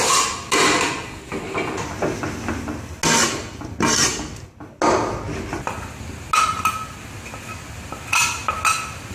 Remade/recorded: recorded